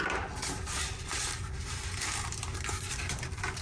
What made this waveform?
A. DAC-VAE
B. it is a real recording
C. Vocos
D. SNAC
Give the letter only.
B